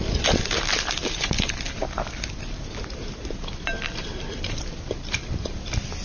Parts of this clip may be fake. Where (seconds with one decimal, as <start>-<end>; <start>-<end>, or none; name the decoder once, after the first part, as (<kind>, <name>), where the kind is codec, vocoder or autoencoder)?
none